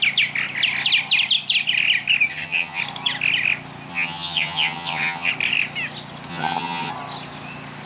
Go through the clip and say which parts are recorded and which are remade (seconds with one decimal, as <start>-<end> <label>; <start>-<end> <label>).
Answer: 0.0-2.3 recorded; 2.3-2.8 remade; 2.8-3.9 recorded; 3.9-5.3 remade; 5.3-6.3 recorded; 6.3-6.9 remade; 6.9-7.9 recorded